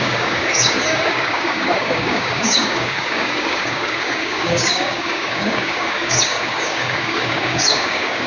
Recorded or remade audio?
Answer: remade